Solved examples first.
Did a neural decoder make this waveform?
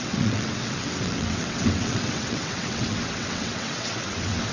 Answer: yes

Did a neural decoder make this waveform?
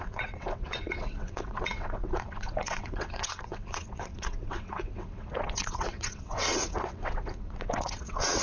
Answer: yes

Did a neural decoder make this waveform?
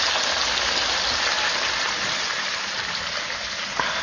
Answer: no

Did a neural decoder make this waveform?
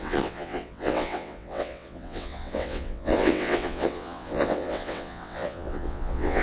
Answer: yes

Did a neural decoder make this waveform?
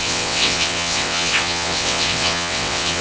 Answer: yes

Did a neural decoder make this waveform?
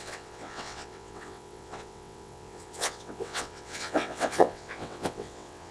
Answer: yes